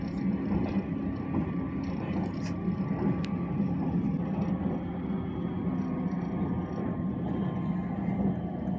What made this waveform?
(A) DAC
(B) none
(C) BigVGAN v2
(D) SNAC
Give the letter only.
B